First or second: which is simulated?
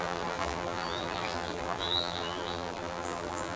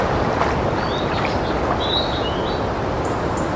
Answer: first